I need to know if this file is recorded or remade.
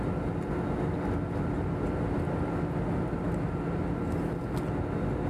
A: recorded